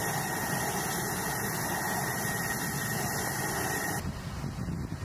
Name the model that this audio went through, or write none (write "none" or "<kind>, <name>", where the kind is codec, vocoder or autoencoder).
none